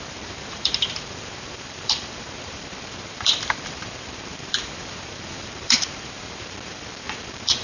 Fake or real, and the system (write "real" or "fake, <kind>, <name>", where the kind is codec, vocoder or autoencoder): fake, vocoder, BigVGAN v2